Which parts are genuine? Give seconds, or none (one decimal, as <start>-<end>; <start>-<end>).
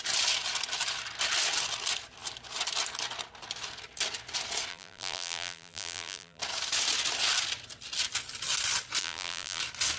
0.0-4.7; 6.4-9.0; 9.6-10.0